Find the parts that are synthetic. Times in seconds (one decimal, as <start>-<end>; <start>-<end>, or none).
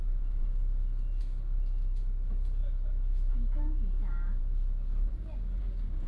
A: none